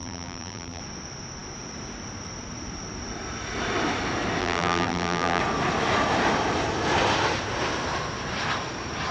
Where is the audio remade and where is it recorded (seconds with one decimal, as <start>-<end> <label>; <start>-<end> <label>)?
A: 0.0-0.8 remade; 0.8-4.4 recorded; 4.4-5.4 remade; 5.4-9.1 recorded